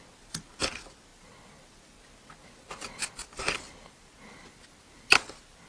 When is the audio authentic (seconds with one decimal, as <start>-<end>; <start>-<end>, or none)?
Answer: 0.0-5.7